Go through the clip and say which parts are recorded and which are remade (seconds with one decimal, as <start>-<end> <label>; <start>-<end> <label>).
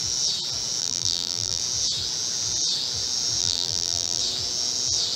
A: 0.0-0.8 recorded; 0.8-1.6 remade; 1.6-3.4 recorded; 3.4-4.2 remade; 4.2-5.2 recorded